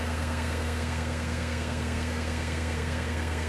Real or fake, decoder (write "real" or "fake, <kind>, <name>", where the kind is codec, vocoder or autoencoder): fake, codec, SNAC